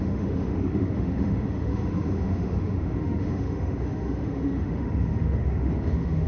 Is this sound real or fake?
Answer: fake